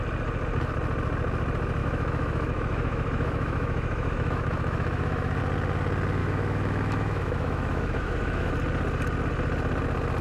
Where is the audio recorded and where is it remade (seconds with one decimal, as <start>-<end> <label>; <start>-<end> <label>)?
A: 0.0-1.8 recorded; 1.8-5.4 remade; 5.4-6.2 recorded; 6.2-8.5 remade; 8.5-10.2 recorded